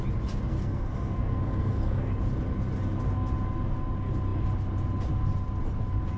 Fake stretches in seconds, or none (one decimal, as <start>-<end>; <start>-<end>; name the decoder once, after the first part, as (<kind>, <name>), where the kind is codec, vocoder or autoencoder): 0.5-2.1 (codec, SNAC)